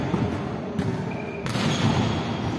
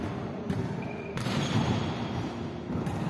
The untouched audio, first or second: first